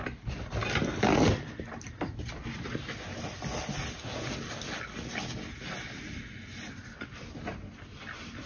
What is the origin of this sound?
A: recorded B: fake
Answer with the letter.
A